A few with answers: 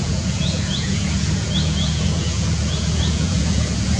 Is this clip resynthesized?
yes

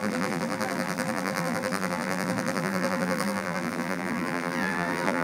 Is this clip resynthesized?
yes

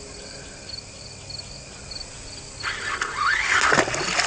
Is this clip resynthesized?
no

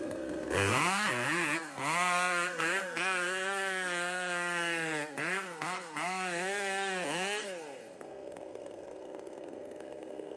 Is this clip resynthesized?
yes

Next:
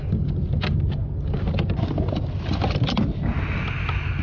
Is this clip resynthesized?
no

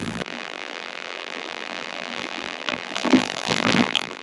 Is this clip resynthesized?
yes